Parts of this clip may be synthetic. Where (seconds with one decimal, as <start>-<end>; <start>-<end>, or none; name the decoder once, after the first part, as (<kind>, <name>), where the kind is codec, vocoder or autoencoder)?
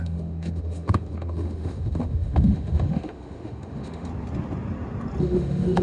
0.0-4.1 (autoencoder, DAC-VAE); 5.2-5.8